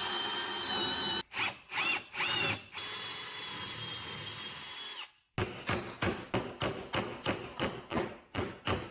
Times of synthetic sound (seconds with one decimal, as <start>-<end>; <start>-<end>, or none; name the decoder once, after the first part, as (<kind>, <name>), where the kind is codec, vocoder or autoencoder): 7.5-8.4 (vocoder, Vocos)

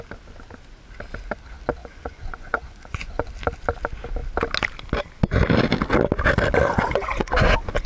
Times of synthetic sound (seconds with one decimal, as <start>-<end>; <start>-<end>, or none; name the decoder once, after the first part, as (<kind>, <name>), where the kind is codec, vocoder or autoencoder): 1.8-3.3 (vocoder, Vocos); 6.7-7.9

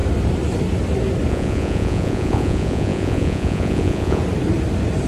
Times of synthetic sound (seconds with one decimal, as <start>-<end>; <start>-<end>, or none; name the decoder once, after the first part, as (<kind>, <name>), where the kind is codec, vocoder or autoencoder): 1.3-4.2 (vocoder, Vocos)

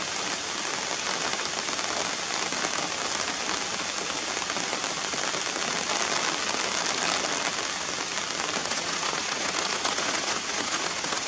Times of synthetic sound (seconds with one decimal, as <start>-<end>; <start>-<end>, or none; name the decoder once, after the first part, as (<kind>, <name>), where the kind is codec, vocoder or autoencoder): 8.6-11.3 (vocoder, Vocos)

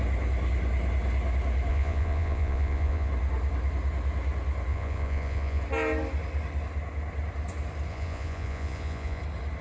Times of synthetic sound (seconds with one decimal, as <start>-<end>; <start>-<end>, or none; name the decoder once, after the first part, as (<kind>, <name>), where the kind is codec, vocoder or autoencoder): 1.7-3.1 (vocoder, Vocos); 4.7-5.6; 7.9-9.2